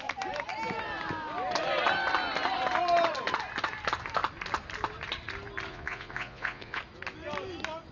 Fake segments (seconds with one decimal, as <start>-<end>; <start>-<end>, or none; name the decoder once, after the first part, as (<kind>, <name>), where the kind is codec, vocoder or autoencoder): 5.7-6.8 (vocoder, Vocos)